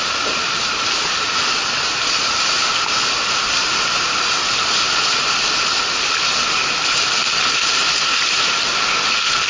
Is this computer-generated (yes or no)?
no